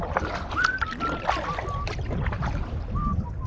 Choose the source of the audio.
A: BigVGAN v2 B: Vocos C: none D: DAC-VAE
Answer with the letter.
C